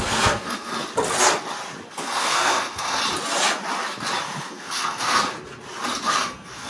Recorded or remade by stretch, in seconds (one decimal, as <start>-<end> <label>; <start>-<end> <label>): 0.0-0.7 remade; 0.7-1.9 recorded; 1.9-3.0 remade; 3.0-4.4 recorded; 4.4-5.2 remade; 5.2-6.1 recorded; 6.1-6.7 remade